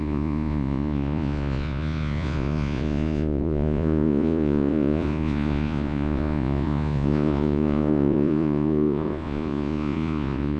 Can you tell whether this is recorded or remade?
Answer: remade